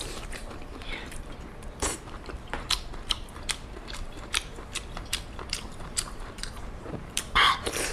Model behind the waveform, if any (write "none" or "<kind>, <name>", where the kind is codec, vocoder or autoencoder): vocoder, BigVGAN v2